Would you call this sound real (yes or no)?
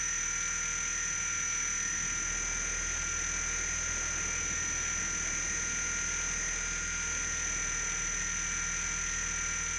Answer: yes